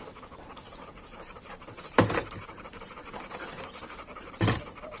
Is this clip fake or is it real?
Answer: fake